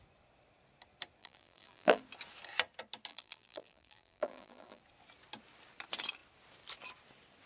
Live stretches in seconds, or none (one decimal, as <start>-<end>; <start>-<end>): 0.0-1.2; 2.0-3.1; 4.8-7.5

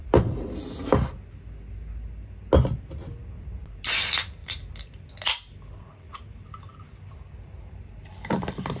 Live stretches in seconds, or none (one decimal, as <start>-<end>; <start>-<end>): 0.9-4.4; 5.1-8.8

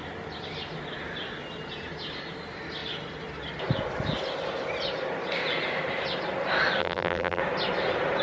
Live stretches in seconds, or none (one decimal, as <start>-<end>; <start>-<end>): 0.0-6.8; 7.4-8.2

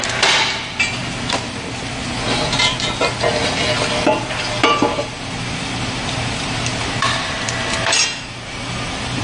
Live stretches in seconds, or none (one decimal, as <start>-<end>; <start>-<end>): 0.0-4.9

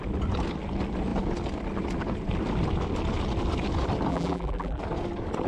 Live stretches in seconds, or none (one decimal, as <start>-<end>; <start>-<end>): 0.0-4.1; 4.8-5.5

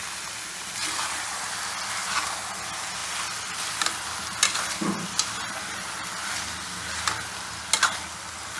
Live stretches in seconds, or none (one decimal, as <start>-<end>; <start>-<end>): 0.0-8.6